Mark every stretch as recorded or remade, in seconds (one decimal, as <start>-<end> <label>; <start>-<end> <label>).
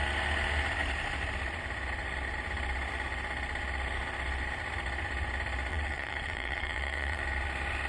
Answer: 0.0-5.7 recorded; 5.7-7.2 remade; 7.2-7.9 recorded